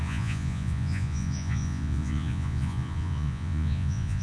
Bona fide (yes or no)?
no